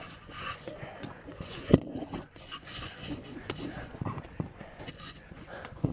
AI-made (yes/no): yes